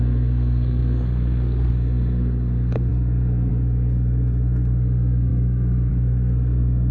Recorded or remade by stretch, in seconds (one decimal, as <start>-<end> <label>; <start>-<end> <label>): 0.0-6.9 remade